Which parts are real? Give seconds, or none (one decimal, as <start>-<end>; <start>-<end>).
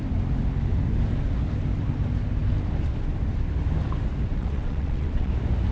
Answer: 0.0-4.3; 5.3-5.7